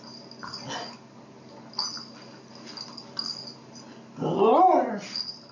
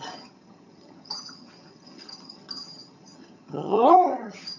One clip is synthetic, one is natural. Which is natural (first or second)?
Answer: first